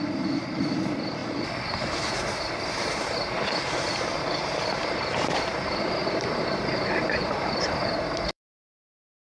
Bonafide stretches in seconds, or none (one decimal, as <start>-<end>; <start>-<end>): 1.2-2.2